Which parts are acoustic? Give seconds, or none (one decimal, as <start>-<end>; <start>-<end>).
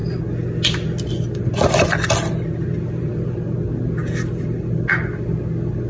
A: 0.0-5.9